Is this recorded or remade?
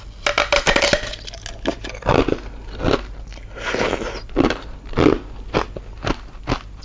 recorded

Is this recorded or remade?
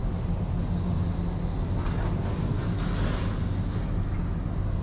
recorded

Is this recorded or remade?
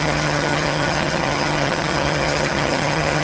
remade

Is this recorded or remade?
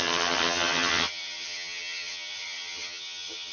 remade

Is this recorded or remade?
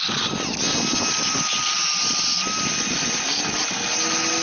recorded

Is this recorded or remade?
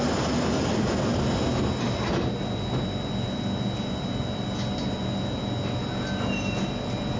recorded